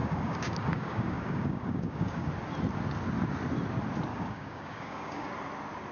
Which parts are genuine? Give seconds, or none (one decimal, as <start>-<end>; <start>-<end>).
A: 2.3-4.1; 5.3-5.9

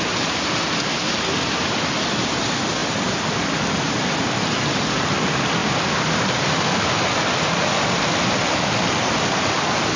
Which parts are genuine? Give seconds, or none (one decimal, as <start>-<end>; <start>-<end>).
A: 0.0-10.0

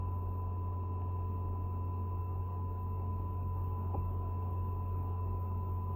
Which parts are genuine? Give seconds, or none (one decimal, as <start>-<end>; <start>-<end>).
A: 0.0-2.2

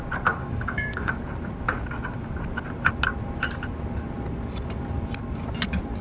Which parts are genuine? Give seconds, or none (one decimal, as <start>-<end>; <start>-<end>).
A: 0.0-0.4; 1.1-6.0

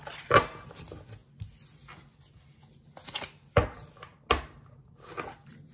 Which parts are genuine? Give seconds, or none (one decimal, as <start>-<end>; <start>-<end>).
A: 0.0-5.7

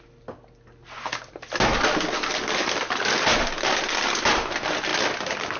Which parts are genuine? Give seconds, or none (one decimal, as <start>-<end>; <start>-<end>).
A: 0.0-5.6